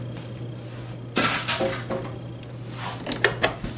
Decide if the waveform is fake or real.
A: real